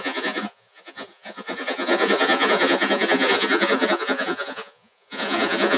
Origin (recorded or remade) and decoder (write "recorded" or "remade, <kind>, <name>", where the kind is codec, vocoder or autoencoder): remade, vocoder, Vocos